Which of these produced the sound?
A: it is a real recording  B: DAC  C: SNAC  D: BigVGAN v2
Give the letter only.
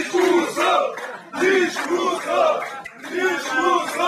A